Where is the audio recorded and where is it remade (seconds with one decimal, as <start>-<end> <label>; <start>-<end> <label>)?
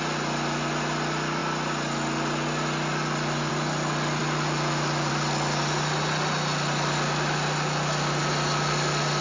0.0-9.2 recorded